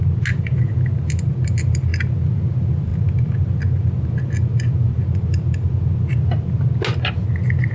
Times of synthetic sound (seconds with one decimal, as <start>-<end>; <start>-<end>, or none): none